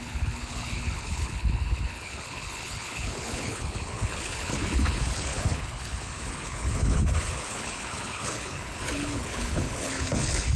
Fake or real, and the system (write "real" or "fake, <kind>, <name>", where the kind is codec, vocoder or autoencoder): fake, codec, HILCodec